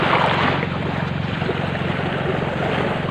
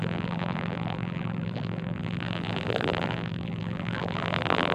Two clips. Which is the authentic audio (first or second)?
first